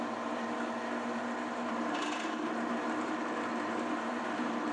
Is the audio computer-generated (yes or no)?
yes